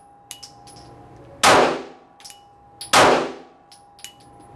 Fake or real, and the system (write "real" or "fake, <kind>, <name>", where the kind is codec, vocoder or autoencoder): real